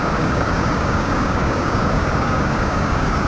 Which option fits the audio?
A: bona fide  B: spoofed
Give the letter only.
B